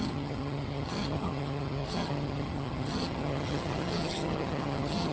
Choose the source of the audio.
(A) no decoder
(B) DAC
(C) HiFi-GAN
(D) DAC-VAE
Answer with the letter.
C